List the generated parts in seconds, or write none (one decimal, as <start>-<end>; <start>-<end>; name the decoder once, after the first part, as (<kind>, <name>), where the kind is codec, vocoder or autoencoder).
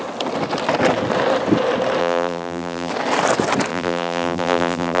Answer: 2.0-2.9 (vocoder, BigVGAN v2); 3.7-5.0